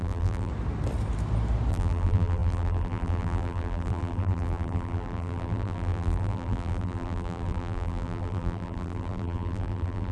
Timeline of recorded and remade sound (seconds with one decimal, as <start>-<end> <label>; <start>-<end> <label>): 0.0-0.5 remade; 0.5-1.7 recorded; 1.7-10.1 remade